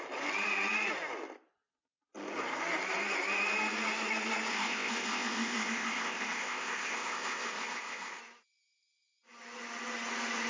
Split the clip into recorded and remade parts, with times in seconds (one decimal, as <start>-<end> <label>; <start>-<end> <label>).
0.0-4.5 recorded; 4.5-8.2 remade; 8.2-10.5 recorded